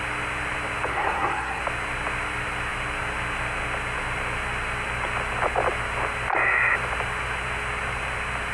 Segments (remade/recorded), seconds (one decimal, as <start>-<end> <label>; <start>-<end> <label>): 0.0-0.9 recorded; 0.9-1.6 remade; 1.6-8.5 recorded